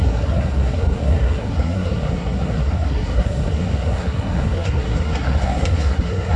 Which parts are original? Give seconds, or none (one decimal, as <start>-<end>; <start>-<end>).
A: none